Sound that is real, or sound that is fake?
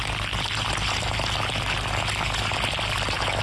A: real